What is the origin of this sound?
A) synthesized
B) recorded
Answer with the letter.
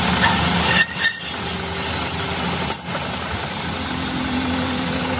B